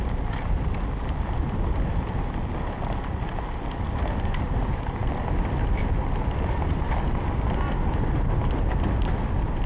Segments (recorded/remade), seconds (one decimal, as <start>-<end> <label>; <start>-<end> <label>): 0.0-9.7 recorded